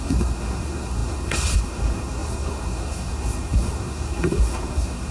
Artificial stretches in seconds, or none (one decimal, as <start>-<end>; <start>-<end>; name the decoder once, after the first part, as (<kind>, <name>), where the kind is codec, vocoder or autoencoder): 0.0-5.1 (codec, SNAC)